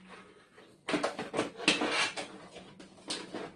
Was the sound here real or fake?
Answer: real